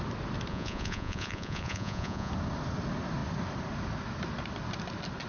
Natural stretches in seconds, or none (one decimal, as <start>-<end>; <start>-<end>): 0.0-0.5; 2.3-5.3